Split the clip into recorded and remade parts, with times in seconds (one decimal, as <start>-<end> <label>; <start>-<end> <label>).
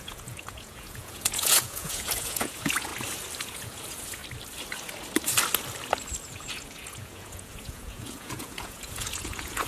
0.0-2.9 remade; 2.9-3.4 recorded; 3.4-4.2 remade; 4.2-6.2 recorded; 6.2-9.7 remade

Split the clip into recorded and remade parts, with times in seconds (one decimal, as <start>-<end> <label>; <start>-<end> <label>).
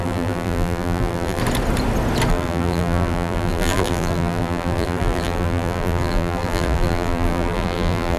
0.0-1.4 remade; 1.4-2.3 recorded; 2.3-8.2 remade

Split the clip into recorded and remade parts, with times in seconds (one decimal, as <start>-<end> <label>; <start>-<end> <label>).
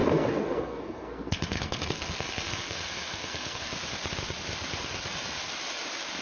0.0-3.7 remade; 3.7-6.2 recorded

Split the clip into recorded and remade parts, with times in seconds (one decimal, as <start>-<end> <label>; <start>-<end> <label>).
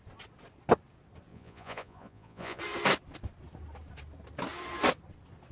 0.0-1.3 recorded; 1.3-2.6 remade; 2.6-5.5 recorded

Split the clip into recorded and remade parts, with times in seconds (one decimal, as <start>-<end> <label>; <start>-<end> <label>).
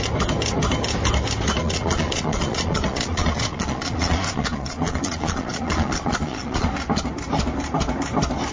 0.0-1.6 recorded; 1.6-6.7 remade; 6.7-8.5 recorded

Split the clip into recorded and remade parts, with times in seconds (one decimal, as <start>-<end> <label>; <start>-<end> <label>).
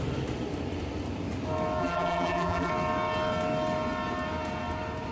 0.0-1.8 recorded; 1.8-2.7 remade; 2.7-5.1 recorded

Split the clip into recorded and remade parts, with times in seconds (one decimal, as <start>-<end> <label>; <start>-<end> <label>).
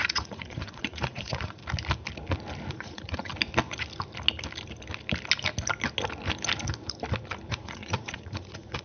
0.0-1.6 remade; 1.6-2.7 recorded; 2.7-3.3 remade; 3.3-7.5 recorded; 7.5-8.8 remade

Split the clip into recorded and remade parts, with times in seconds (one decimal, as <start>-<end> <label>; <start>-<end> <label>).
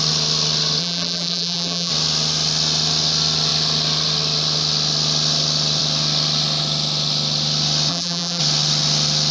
0.0-0.8 recorded; 0.8-1.9 remade; 1.9-7.9 recorded; 7.9-8.4 remade; 8.4-9.3 recorded